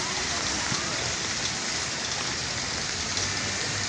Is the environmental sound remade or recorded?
recorded